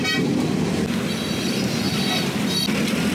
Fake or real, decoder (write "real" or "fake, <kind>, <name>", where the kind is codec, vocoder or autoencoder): real